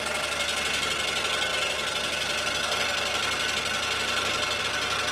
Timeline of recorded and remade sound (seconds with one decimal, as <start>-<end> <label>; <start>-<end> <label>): 0.0-5.1 recorded